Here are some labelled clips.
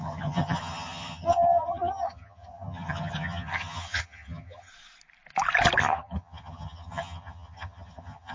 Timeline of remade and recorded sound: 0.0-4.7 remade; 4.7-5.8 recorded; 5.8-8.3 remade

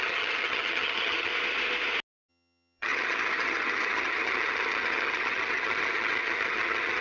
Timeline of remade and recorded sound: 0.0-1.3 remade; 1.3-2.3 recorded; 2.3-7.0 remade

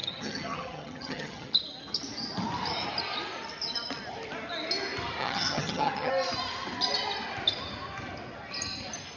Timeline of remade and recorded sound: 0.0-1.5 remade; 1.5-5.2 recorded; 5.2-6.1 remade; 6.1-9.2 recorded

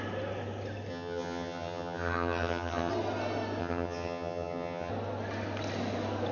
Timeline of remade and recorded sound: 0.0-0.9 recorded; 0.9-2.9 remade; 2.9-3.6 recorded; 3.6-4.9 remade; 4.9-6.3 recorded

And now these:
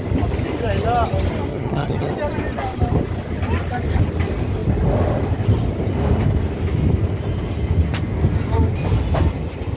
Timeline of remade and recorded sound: 0.0-1.5 recorded; 1.5-2.1 remade; 2.1-9.8 recorded

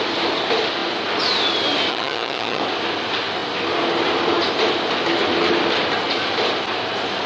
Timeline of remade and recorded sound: 0.0-1.9 recorded; 1.9-2.6 remade; 2.6-7.3 recorded

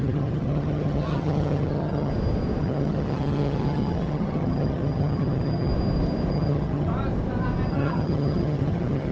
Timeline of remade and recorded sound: 0.0-2.1 remade; 2.1-2.6 recorded; 2.6-5.7 remade; 5.7-6.3 recorded; 6.3-6.9 remade; 6.9-7.7 recorded; 7.7-9.1 remade